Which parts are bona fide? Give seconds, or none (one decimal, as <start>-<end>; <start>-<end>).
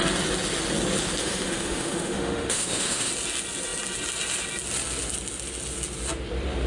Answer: 0.0-1.2; 3.1-6.7